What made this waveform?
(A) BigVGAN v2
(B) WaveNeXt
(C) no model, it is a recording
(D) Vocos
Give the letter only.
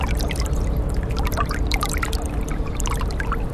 C